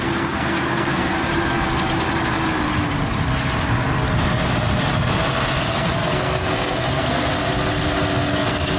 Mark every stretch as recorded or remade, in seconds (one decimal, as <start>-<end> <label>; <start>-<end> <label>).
0.0-1.1 remade; 1.1-5.6 recorded; 5.6-7.3 remade; 7.3-8.3 recorded; 8.3-8.8 remade